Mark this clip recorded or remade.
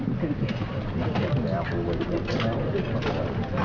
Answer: recorded